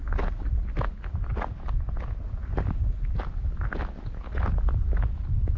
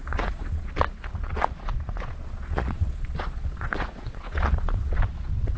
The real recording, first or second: first